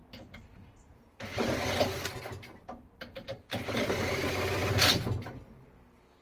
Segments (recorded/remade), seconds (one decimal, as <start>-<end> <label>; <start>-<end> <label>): 0.0-6.2 recorded